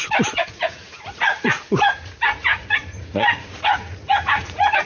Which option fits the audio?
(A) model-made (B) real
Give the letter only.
A